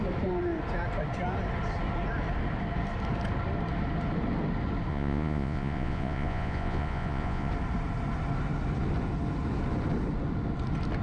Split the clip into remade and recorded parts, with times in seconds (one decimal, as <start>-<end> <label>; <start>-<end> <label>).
0.0-4.9 recorded; 4.9-7.5 remade; 7.5-11.0 recorded